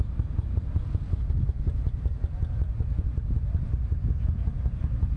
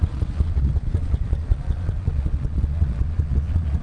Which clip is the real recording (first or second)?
first